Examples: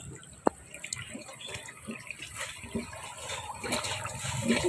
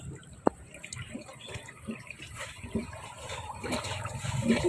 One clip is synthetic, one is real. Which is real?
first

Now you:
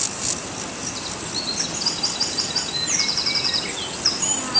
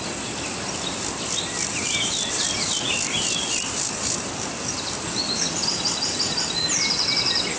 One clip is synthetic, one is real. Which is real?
first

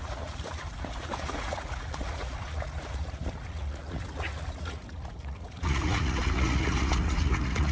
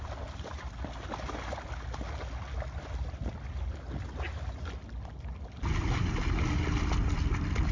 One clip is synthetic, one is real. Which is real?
second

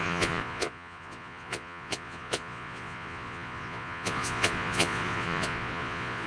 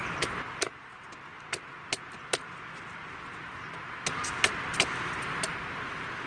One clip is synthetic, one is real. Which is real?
second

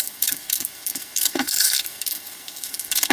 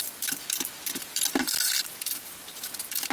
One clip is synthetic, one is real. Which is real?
second